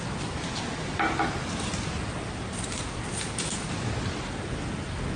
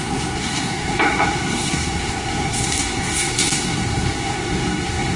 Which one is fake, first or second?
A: second